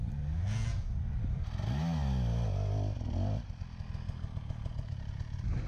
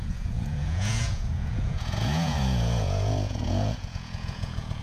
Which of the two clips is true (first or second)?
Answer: first